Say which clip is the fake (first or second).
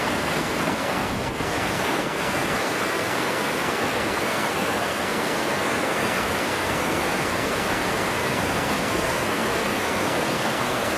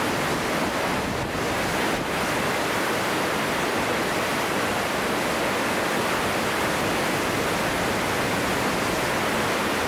first